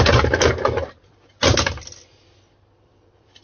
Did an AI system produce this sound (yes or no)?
no